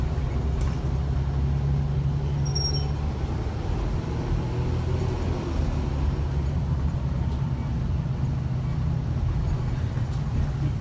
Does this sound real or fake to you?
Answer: real